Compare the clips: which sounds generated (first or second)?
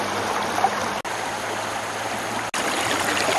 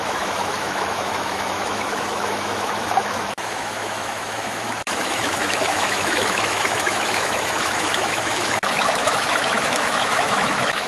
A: second